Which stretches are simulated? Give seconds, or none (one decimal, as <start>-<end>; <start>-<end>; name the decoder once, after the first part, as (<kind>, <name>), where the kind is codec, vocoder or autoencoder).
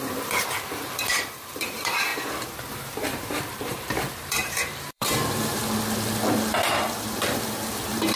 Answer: 0.0-2.1 (vocoder, BigVGAN v2); 2.7-5.6; 6.7-8.2